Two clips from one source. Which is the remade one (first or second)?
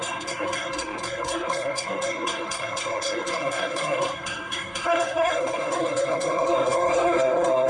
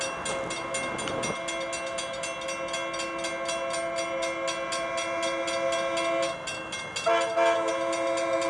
first